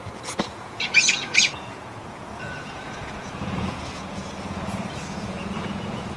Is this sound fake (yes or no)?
yes